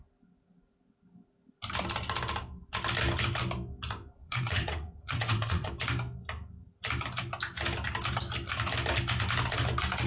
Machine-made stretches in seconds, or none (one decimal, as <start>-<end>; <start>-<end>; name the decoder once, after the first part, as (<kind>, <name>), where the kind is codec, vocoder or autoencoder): 4.2-5.7 (vocoder, WaveNeXt)